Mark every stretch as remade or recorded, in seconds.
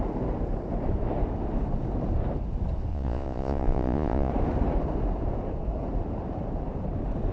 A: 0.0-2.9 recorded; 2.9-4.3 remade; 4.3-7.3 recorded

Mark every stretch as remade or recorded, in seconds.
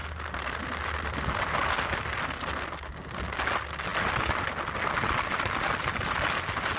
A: 0.0-6.8 recorded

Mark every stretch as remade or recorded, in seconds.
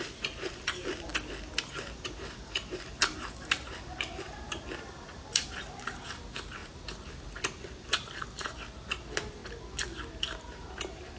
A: 0.0-1.1 remade; 1.1-1.6 recorded; 1.6-9.4 remade; 9.4-10.1 recorded; 10.1-11.2 remade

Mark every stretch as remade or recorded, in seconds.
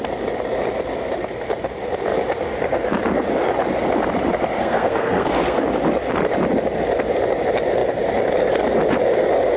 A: 0.0-4.6 recorded; 4.6-5.6 remade; 5.6-9.6 recorded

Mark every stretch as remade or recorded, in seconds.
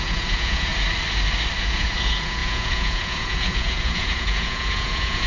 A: 0.0-0.7 remade; 0.7-1.6 recorded; 1.6-5.3 remade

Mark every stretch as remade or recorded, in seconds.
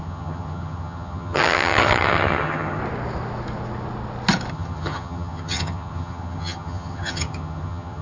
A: 0.0-2.8 remade; 2.8-4.5 recorded; 4.5-8.0 remade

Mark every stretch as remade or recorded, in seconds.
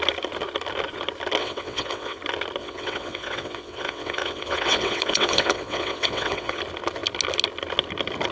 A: 0.0-1.4 recorded; 1.4-2.2 remade; 2.2-2.6 recorded; 2.6-6.6 remade; 6.6-8.3 recorded